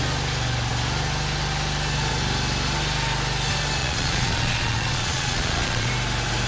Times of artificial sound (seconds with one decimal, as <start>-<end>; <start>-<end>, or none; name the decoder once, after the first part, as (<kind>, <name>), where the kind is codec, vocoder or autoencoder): 3.8-5.9 (vocoder, Vocos)